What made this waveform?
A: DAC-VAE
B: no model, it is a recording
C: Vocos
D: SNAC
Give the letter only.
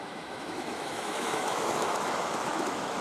A